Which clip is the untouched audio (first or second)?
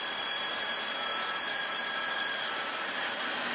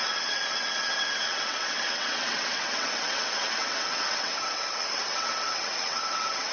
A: first